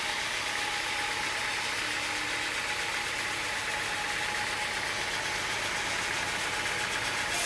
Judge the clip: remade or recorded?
recorded